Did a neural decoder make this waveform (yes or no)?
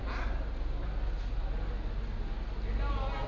no